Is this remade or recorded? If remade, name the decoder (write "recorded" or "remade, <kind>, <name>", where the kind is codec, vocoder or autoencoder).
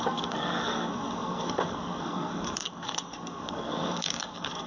remade, codec, SNAC